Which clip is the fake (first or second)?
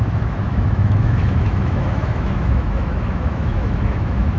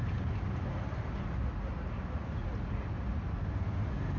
first